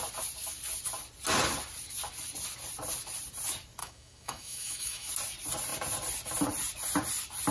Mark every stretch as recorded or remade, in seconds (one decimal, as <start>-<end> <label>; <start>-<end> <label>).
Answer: 0.0-3.8 recorded; 3.8-5.1 remade; 5.1-7.5 recorded